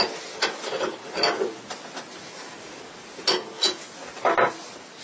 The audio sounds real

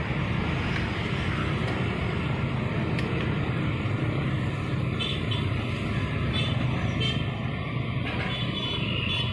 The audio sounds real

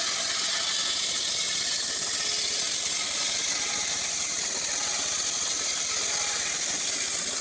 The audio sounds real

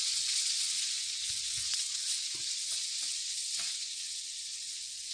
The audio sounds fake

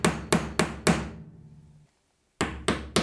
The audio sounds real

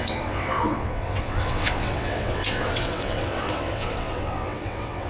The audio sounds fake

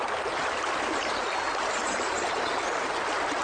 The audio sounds real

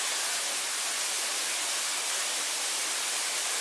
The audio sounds real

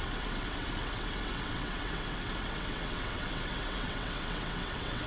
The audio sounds fake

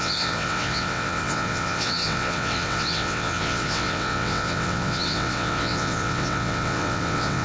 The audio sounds fake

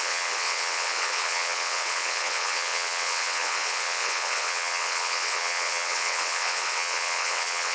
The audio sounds fake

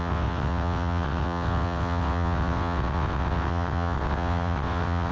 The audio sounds fake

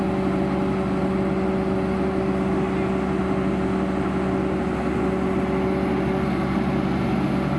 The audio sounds real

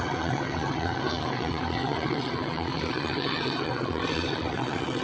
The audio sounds fake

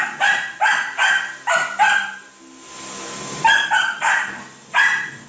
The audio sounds real